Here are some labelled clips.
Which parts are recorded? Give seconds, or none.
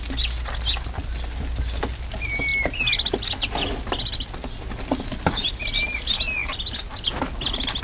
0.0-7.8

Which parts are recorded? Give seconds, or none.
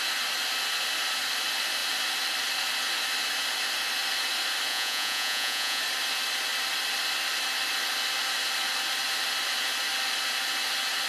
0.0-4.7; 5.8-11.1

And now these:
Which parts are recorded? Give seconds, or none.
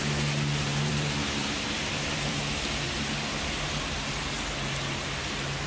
0.0-0.7; 4.1-5.7